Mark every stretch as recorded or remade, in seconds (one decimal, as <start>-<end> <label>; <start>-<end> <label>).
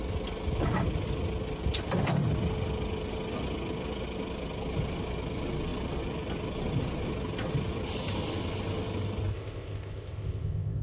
0.0-9.3 recorded; 9.3-10.8 remade